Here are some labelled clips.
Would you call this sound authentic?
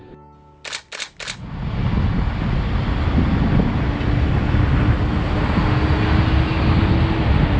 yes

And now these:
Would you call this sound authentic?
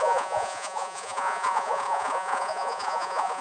no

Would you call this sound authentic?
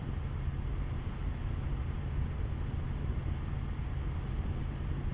yes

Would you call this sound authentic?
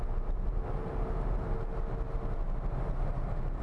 yes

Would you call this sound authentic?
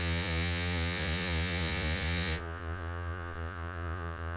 no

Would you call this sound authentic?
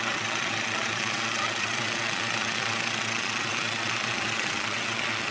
no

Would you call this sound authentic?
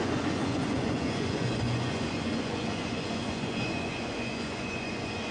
no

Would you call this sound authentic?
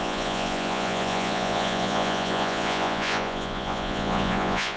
no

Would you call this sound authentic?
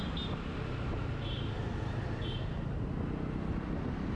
yes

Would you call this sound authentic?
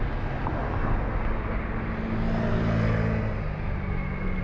yes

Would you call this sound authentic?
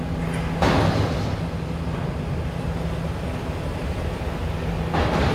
yes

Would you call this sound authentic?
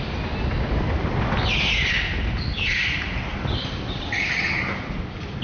yes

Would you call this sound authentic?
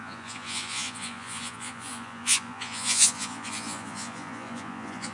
no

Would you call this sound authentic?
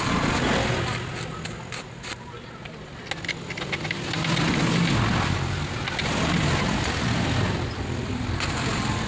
yes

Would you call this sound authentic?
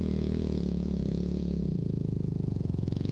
no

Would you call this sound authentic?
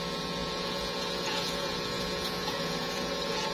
no